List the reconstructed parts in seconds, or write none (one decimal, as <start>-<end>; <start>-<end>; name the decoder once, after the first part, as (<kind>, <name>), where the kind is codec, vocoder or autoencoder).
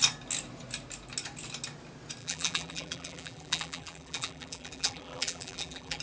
2.2-6.0 (vocoder, BigVGAN v2)